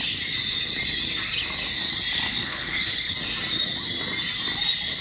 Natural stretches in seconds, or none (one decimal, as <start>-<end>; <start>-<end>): 0.0-2.1; 3.1-5.0